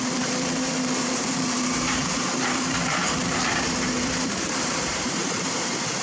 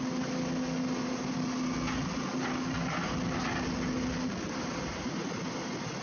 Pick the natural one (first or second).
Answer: second